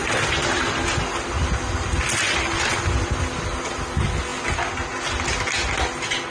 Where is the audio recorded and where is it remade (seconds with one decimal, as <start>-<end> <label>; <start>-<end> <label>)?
0.0-6.3 recorded